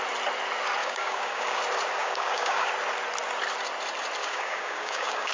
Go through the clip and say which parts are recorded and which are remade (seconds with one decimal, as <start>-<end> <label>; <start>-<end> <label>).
0.0-0.8 recorded; 0.8-1.6 remade; 1.6-2.0 recorded; 2.0-2.7 remade; 2.7-4.2 recorded; 4.2-5.3 remade